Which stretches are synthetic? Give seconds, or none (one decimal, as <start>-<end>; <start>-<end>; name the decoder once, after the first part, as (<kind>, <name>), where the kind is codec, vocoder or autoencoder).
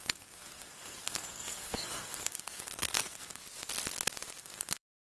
0.0-3.4 (codec, SNAC); 4.4-5.0